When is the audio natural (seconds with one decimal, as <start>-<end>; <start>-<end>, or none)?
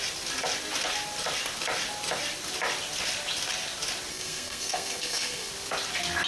0.0-4.1; 5.5-6.3